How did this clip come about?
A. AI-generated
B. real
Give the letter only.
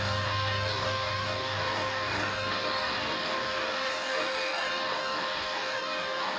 A